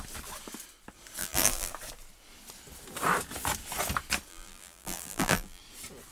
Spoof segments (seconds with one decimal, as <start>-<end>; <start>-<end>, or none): 1.2-1.7; 4.3-5.6